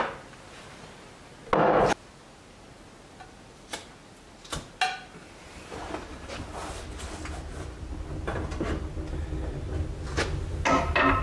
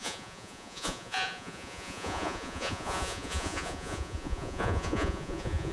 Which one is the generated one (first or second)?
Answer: second